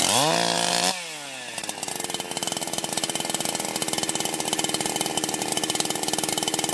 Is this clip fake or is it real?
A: real